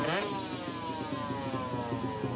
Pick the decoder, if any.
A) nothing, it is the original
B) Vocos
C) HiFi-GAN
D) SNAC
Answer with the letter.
A